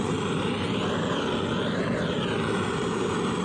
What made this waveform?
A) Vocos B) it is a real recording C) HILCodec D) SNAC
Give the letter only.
B